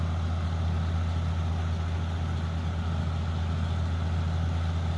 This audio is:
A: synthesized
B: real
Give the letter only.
B